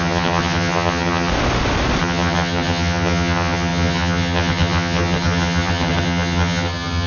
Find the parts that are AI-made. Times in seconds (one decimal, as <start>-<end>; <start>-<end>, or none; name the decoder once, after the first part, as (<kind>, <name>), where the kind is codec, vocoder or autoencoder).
0.0-1.3 (vocoder, HiFi-GAN); 2.0-7.1